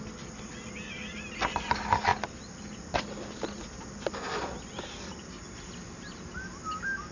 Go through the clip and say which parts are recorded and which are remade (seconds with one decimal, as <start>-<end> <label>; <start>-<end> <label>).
0.0-7.1 recorded